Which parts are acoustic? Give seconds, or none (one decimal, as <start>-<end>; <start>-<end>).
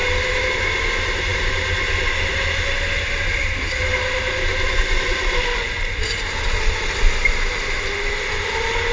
0.0-5.5; 6.0-8.9